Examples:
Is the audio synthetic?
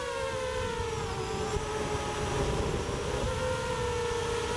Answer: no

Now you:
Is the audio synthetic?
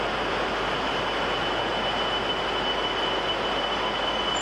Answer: no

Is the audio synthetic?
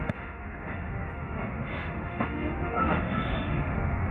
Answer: yes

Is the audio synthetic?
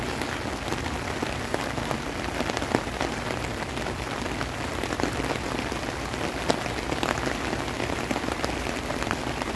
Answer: no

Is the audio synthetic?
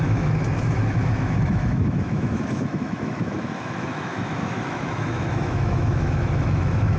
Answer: yes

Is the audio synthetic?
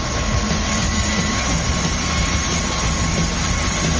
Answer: no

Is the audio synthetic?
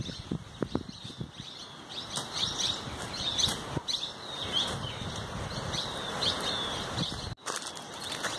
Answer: no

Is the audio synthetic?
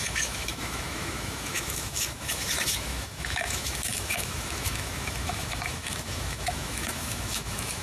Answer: yes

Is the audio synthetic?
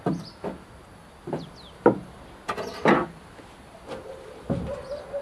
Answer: no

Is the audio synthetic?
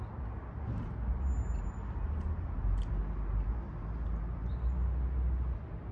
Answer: no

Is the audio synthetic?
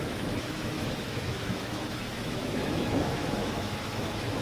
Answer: yes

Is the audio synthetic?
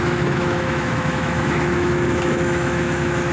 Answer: yes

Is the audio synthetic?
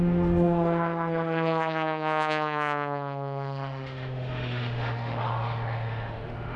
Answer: yes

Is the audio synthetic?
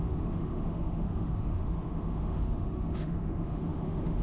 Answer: yes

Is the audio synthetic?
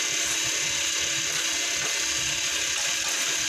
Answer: no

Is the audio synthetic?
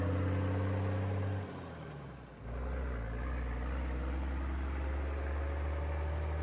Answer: no